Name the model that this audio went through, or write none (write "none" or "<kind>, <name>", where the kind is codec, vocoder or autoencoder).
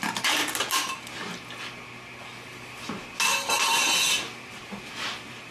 none